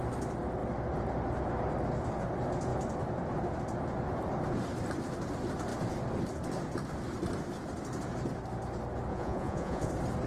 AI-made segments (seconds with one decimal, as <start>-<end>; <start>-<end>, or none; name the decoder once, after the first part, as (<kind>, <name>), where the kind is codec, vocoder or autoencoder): 9.1-9.9 (vocoder, Vocos)